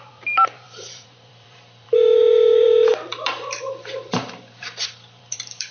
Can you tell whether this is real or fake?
fake